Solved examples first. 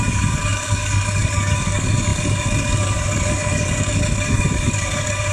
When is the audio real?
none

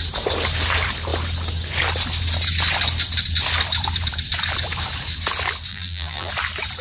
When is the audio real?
0.0-5.7; 6.3-6.8

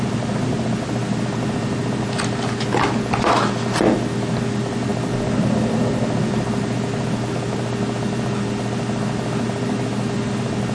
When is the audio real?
0.0-10.7